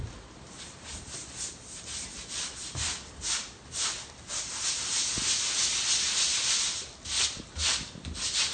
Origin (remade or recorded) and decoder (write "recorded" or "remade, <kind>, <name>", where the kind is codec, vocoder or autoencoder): recorded